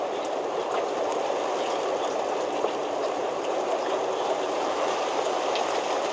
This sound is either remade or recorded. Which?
recorded